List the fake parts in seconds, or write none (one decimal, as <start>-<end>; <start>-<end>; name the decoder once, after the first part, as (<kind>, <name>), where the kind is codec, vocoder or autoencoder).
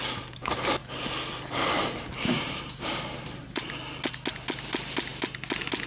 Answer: 0.8-3.7 (vocoder, BigVGAN v2)